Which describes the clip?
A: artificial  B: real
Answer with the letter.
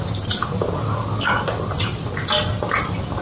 B